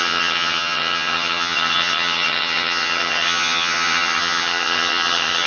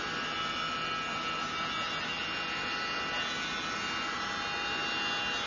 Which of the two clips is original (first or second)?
second